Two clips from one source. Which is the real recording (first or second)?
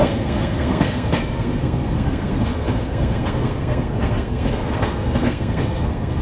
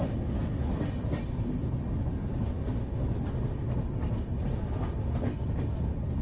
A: second